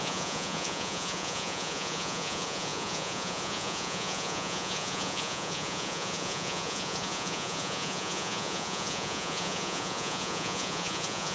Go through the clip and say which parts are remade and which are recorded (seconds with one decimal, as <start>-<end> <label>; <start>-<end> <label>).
0.0-11.3 remade